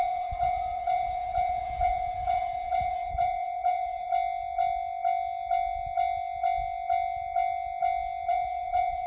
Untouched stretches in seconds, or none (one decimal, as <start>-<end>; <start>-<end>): 4.1-8.3